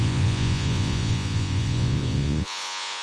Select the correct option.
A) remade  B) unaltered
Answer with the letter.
A